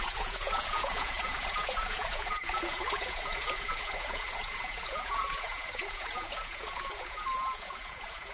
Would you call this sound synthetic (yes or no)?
yes